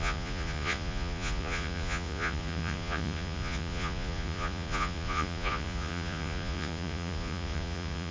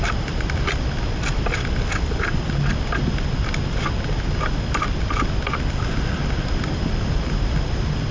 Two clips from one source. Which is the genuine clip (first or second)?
second